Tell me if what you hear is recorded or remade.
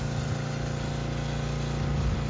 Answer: recorded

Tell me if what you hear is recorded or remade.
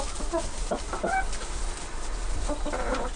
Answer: recorded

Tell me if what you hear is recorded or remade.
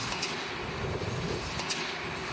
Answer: recorded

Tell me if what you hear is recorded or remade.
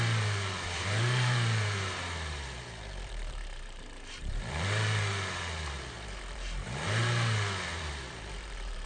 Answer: remade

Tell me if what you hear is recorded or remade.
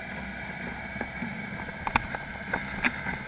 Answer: recorded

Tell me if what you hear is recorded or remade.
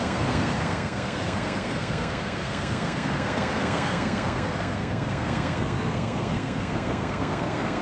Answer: remade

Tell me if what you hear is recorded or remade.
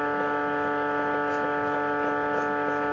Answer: recorded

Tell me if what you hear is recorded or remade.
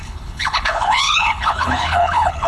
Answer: remade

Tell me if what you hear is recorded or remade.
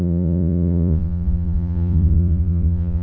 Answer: remade